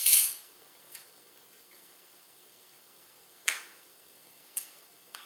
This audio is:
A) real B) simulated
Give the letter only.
B